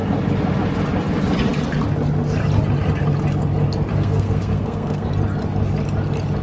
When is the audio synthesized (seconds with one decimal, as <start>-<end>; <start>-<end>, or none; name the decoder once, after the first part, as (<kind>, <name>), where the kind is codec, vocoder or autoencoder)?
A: 3.9-5.1 (codec, SNAC)